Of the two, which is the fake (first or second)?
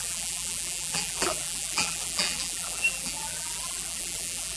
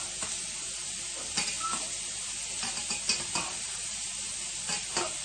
first